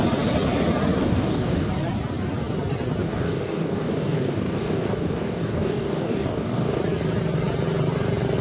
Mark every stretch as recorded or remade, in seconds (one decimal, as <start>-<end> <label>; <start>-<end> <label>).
0.0-1.0 recorded; 1.0-1.7 remade; 1.7-3.0 recorded; 3.0-6.8 remade; 6.8-8.4 recorded